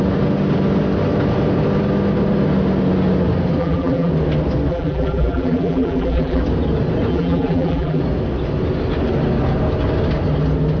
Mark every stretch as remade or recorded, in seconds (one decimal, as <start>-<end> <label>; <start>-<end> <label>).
0.0-3.6 recorded; 3.6-4.1 remade; 4.1-4.7 recorded; 4.7-6.4 remade; 6.4-7.1 recorded; 7.1-8.0 remade; 8.0-10.8 recorded